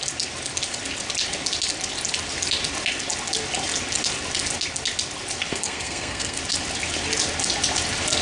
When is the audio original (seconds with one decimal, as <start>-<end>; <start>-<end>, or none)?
0.0-5.5; 6.4-8.2